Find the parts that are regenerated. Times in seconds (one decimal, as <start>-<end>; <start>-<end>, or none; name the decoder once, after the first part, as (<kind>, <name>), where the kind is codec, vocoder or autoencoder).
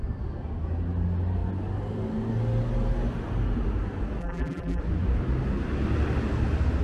4.2-4.8 (vocoder, BigVGAN v2)